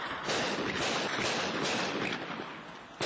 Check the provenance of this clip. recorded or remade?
recorded